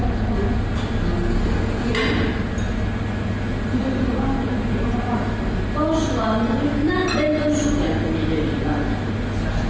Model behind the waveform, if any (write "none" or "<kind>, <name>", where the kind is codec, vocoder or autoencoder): none